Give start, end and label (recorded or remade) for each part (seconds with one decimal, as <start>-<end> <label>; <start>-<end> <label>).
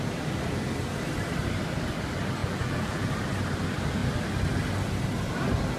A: 0.0-2.4 recorded; 2.4-3.1 remade; 3.1-5.8 recorded